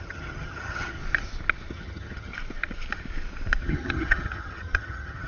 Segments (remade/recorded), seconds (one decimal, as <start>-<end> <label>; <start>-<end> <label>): 0.0-1.0 remade; 1.0-1.7 recorded; 1.7-2.3 remade; 2.3-3.6 recorded; 3.6-5.3 remade